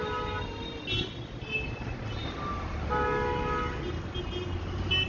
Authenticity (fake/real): real